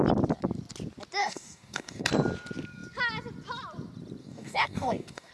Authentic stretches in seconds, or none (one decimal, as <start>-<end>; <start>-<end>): 0.0-1.2; 2.1-4.2